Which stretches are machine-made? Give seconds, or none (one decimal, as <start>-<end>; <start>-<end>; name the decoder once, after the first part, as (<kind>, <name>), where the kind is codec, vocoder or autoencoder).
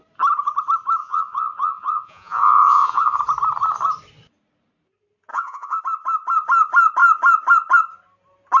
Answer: 1.0-3.2 (vocoder, Vocos); 5.3-5.8